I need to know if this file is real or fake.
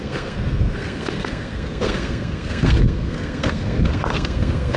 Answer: fake